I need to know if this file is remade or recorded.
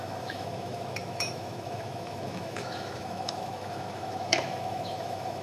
remade